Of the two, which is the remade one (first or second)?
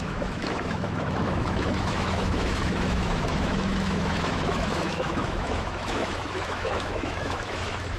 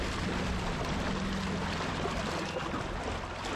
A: first